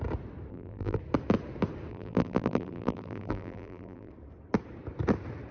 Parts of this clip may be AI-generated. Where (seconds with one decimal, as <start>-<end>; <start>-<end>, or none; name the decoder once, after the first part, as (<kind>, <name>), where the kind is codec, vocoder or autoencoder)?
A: 0.5-1.0 (vocoder, BigVGAN v2); 1.9-4.1